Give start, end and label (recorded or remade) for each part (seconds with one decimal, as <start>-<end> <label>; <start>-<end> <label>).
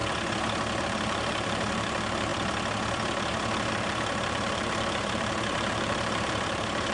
0.0-0.8 recorded; 0.8-2.3 remade; 2.3-3.7 recorded; 3.7-6.9 remade